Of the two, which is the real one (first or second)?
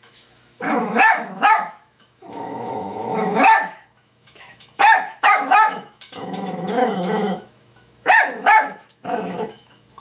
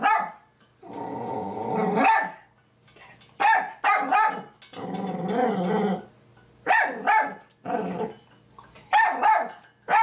second